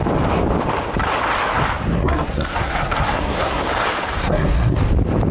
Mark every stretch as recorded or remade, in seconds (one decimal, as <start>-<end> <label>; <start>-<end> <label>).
0.0-1.9 recorded; 1.9-3.6 remade; 3.6-4.2 recorded; 4.2-4.8 remade; 4.8-5.3 recorded